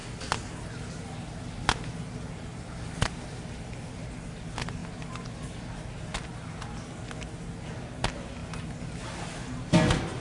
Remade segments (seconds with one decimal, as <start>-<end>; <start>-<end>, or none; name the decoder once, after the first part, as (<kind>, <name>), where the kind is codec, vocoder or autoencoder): none